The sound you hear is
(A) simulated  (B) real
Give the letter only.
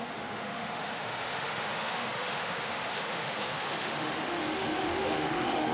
A